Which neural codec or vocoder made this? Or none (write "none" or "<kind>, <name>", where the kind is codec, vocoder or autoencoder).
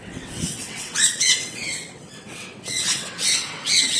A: vocoder, WaveNeXt